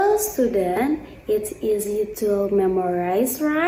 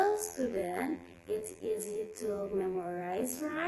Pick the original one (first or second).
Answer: first